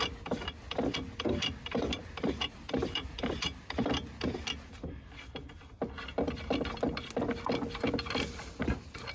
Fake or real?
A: real